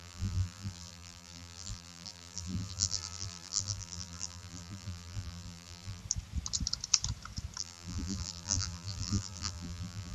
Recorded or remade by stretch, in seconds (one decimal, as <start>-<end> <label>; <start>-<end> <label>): 0.0-6.0 remade; 6.0-7.6 recorded; 7.6-10.1 remade